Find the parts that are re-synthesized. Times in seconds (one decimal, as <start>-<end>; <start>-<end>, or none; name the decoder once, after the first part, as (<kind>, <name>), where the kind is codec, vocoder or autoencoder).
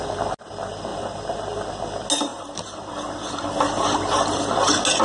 0.9-1.8 (vocoder, BigVGAN v2); 2.3-2.9